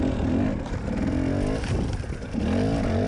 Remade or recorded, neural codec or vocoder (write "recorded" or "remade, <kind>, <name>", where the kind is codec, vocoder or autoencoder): recorded